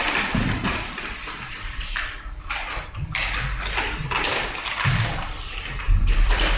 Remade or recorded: recorded